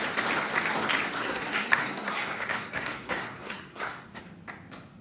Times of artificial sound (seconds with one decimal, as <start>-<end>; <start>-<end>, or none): 1.2-4.2